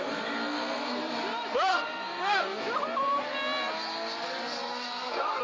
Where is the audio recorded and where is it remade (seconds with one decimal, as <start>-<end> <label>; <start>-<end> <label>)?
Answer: 0.0-1.7 recorded; 1.7-2.6 remade; 2.6-4.6 recorded; 4.6-5.4 remade